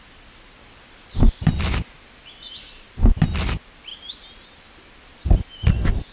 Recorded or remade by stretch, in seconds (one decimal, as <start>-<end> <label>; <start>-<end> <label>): 0.0-0.6 recorded; 0.6-1.9 remade; 1.9-3.9 recorded; 3.9-4.9 remade; 4.9-6.1 recorded